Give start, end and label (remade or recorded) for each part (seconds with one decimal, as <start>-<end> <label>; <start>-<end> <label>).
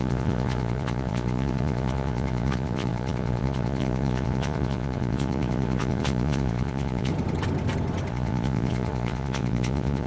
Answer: 0.0-7.1 remade; 7.1-8.1 recorded; 8.1-10.1 remade